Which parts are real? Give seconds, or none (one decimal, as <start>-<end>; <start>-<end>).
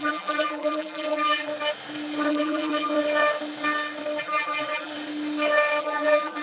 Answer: 1.5-2.3; 2.9-4.2; 4.9-5.8